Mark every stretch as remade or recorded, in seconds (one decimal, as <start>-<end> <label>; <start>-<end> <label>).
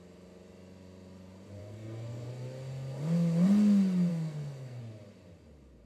0.0-1.6 recorded; 1.6-2.3 remade; 2.3-4.1 recorded; 4.1-4.8 remade; 4.8-5.9 recorded